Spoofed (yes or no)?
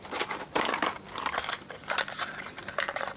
no